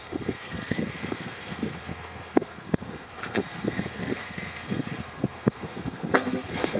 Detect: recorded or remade remade